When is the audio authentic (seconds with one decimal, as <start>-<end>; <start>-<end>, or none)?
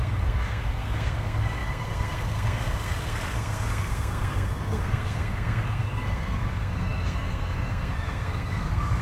none